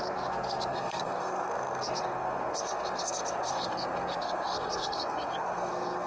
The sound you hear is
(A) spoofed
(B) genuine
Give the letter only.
A